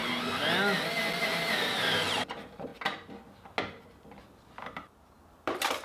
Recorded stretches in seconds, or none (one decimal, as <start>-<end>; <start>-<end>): 0.0-1.2; 2.7-3.6